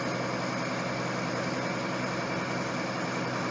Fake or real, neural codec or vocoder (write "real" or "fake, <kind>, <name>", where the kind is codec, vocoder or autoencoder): real